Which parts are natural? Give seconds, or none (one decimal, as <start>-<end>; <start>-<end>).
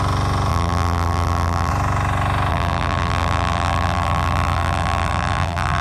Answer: 0.0-0.5; 1.7-2.5